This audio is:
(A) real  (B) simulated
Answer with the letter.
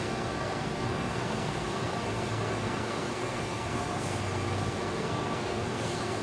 B